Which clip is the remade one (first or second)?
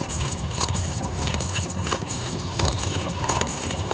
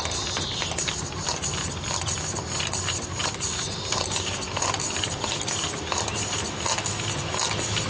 first